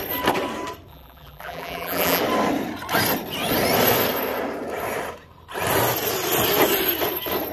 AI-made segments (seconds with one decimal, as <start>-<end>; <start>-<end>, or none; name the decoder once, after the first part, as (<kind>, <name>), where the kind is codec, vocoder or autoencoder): 0.9-2.2 (vocoder, BigVGAN v2)